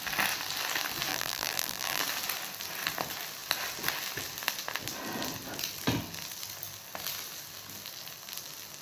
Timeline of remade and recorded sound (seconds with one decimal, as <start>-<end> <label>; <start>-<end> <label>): 0.0-1.1 recorded; 1.1-2.0 remade; 2.0-8.8 recorded